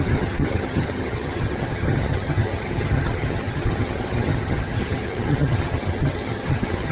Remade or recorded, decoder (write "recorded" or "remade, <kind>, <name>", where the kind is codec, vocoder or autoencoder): remade, vocoder, HiFi-GAN